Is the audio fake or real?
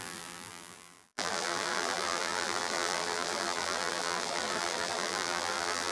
fake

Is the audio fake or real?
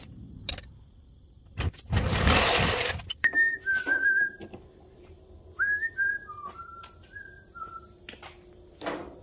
fake